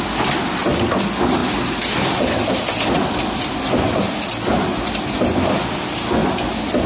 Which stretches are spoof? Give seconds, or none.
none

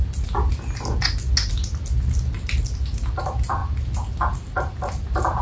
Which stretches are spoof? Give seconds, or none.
none

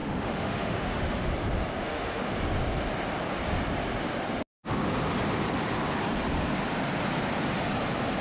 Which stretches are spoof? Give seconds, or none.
0.0-1.3 (autoencoder, DAC-VAE); 1.8-2.3